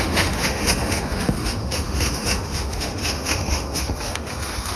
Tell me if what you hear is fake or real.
fake